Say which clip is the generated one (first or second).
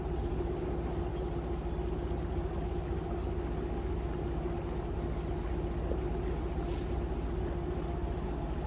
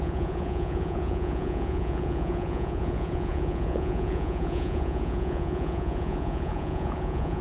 second